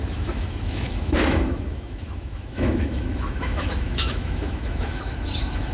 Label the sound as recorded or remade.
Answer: remade